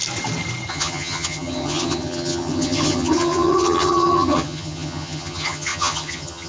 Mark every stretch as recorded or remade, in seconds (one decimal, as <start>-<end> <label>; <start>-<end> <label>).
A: 0.0-0.7 recorded; 0.7-6.5 remade